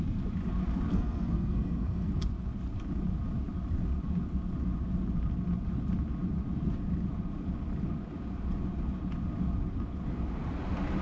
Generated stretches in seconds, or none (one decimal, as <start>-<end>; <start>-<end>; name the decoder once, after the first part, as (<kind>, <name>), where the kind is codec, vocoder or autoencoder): 0.9-2.1 (codec, SNAC)